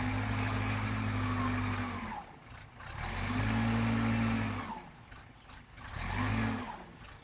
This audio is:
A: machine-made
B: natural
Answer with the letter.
B